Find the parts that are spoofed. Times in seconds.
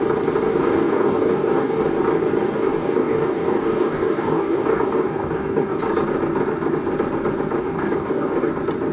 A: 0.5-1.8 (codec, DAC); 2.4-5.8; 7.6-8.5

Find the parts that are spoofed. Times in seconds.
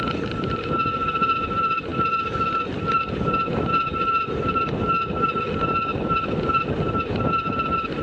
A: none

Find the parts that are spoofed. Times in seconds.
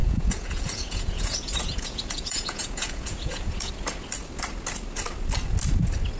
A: 0.0-3.7 (vocoder, Vocos)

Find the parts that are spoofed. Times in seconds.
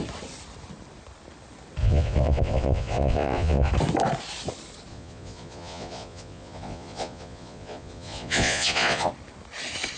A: 1.8-3.7 (vocoder, Vocos); 4.9-9.1